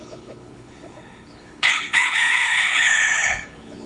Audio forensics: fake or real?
fake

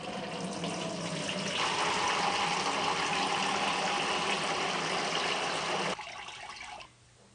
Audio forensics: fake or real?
real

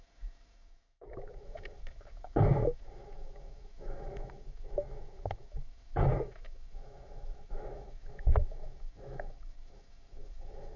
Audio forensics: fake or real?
fake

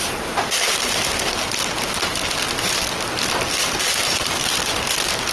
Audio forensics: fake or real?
real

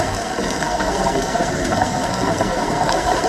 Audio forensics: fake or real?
fake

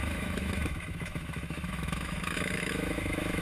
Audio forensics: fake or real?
fake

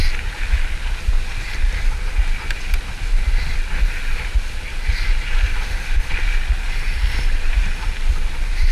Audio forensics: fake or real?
real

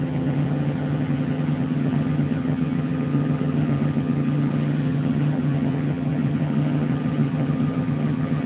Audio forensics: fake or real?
fake